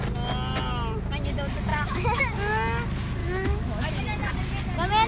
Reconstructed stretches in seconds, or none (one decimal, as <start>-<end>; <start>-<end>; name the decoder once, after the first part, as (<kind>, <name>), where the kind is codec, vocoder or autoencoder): 1.7-2.2 (autoencoder, DAC-VAE); 3.2-4.0